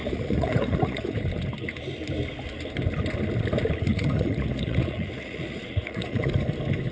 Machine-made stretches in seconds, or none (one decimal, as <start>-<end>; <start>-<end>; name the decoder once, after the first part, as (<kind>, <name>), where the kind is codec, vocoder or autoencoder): 0.0-1.2 (vocoder, Vocos); 3.9-6.3